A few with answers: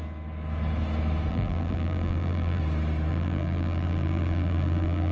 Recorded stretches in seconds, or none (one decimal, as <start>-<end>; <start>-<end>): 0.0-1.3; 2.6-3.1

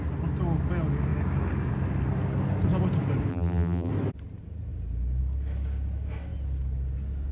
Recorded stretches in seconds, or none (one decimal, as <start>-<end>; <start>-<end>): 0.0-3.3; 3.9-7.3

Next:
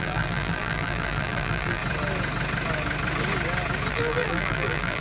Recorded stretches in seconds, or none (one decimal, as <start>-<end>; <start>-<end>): 1.8-3.9

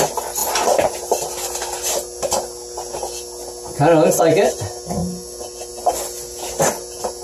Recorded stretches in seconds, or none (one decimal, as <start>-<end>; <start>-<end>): 0.0-5.0; 5.7-7.2